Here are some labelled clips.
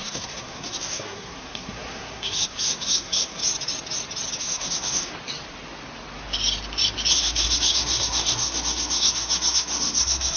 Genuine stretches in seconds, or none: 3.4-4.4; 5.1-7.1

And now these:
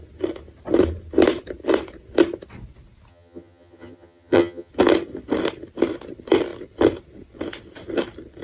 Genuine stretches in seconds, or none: 0.0-3.1; 4.7-8.4

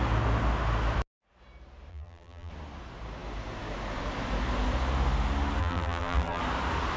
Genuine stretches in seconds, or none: 0.0-1.9; 2.5-5.6; 6.4-7.0

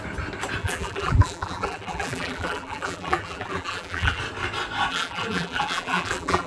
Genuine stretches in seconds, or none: 0.0-0.6; 4.2-4.9

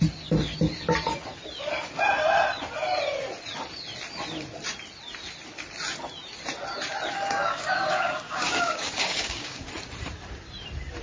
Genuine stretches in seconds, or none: 0.0-7.1; 9.7-11.0

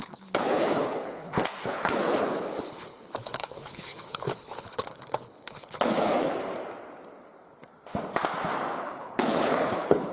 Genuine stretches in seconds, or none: 6.5-8.8

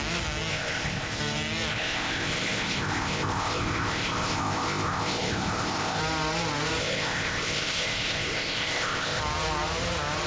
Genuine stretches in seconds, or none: 0.0-0.5; 1.2-1.7; 6.0-6.8; 9.2-10.3